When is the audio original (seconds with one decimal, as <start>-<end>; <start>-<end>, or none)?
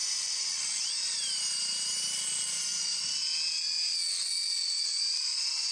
0.0-5.7